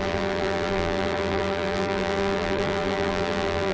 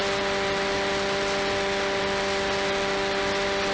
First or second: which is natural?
second